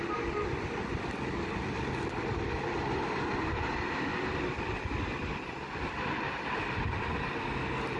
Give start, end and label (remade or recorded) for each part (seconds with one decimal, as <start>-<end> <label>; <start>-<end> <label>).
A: 0.0-8.0 recorded